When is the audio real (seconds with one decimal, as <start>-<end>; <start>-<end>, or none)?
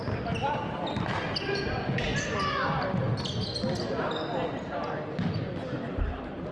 0.0-6.5